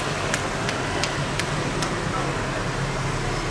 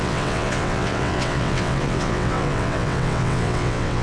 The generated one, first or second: second